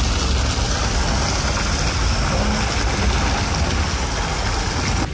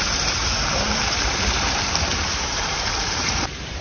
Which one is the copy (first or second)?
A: second